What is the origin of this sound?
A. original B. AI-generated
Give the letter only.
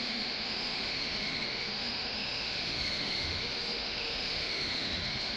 B